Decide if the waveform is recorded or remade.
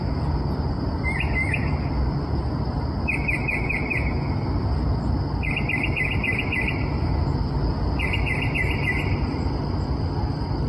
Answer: recorded